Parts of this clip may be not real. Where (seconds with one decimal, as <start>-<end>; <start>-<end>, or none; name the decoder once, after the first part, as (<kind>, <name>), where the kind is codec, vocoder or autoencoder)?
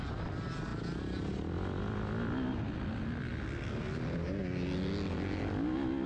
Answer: none